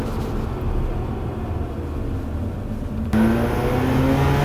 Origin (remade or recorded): recorded